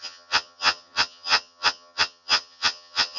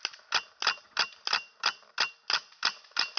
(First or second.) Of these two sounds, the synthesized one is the first